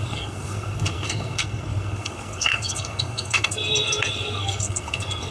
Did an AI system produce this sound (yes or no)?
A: yes